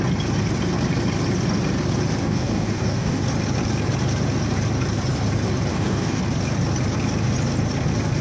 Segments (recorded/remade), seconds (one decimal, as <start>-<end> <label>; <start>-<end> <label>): 0.0-2.2 recorded; 2.2-3.2 remade; 3.2-5.7 recorded; 5.7-6.2 remade; 6.2-8.2 recorded